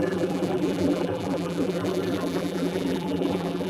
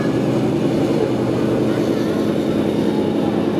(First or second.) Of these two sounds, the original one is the second